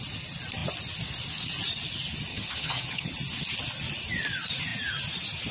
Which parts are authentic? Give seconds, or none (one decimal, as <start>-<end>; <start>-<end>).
0.0-2.3; 3.1-5.5